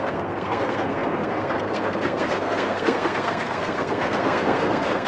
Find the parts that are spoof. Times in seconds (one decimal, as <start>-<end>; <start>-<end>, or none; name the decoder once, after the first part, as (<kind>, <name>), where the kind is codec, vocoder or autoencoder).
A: 0.0-5.1 (codec, SNAC)